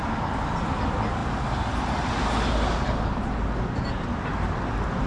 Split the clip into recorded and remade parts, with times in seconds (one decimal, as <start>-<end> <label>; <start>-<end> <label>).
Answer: 0.0-5.1 recorded